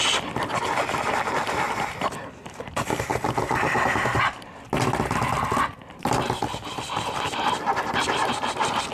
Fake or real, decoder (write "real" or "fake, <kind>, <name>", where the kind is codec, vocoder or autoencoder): real